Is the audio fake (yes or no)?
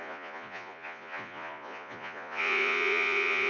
yes